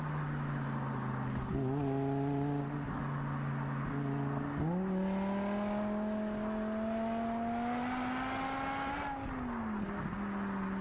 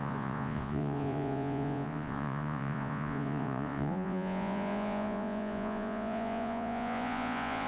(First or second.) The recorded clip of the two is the first